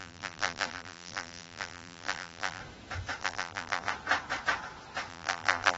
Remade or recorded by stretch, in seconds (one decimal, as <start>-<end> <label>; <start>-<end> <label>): 0.0-2.6 remade; 2.6-3.2 recorded; 3.2-3.9 remade; 3.9-5.1 recorded; 5.1-5.8 remade